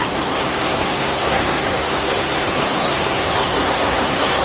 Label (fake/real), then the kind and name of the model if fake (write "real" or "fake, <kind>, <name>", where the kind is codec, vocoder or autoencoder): fake, codec, SNAC